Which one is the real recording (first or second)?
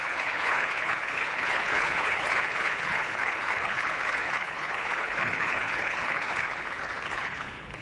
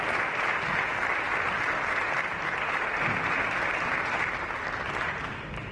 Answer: second